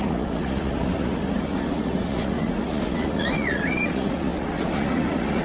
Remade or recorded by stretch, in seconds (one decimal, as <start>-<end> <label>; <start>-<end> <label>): 0.0-5.4 remade